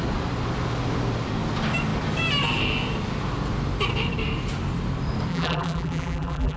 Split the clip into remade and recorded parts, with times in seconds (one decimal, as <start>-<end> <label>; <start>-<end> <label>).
0.0-5.3 recorded; 5.3-6.6 remade